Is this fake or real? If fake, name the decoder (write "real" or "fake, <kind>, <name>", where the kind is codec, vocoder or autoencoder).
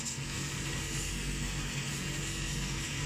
fake, codec, SNAC